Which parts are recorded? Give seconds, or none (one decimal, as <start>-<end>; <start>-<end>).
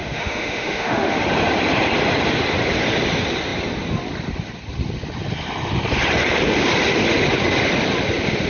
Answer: 1.2-8.5